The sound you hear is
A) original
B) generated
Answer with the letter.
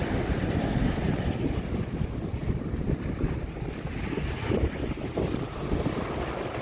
A